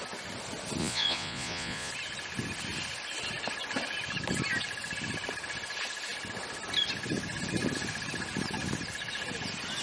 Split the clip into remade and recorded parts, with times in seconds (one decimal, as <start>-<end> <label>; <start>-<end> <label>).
0.0-0.8 recorded; 0.8-1.9 remade; 1.9-9.8 recorded